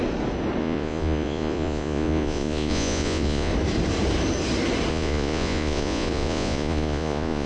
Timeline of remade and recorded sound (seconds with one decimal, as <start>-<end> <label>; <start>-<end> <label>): 0.0-0.6 recorded; 0.6-3.5 remade; 3.5-4.9 recorded; 4.9-7.5 remade